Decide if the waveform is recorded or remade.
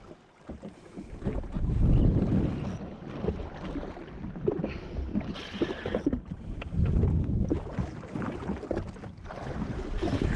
recorded